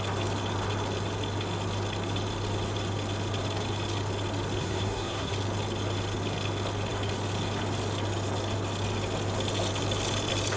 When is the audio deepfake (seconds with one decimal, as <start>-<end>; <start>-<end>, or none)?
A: 4.6-5.3